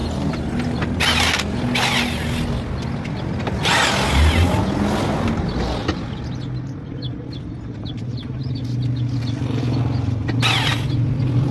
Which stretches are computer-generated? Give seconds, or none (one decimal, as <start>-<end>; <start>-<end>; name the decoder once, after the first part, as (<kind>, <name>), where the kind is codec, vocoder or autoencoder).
none